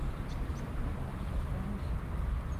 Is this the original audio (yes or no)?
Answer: yes